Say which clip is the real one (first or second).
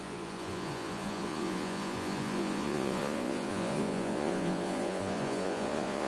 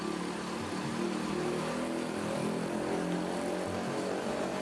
second